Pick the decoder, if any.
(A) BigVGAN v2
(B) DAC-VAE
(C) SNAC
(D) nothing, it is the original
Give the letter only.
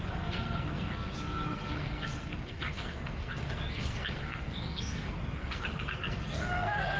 C